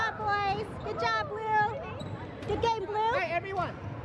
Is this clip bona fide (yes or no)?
yes